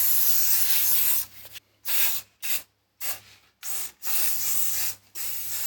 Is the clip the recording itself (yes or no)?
yes